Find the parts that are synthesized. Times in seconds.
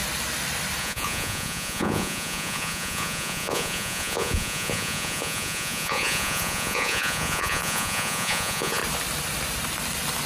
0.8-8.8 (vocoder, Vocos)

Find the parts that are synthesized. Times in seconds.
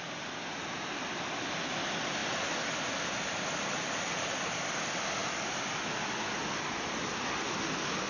none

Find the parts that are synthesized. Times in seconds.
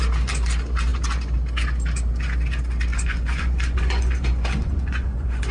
2.9-5.5 (vocoder, Vocos)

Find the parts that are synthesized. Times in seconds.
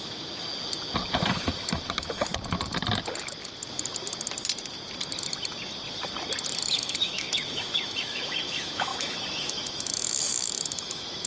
0.0-0.5 (autoencoder, DAC-VAE); 1.1-2.3; 6.7-11.3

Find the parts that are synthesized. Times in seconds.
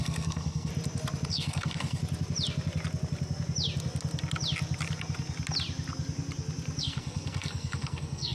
0.0-0.7 (codec, SNAC); 1.3-2.0; 6.8-8.3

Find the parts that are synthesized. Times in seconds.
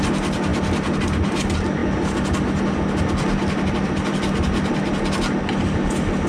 none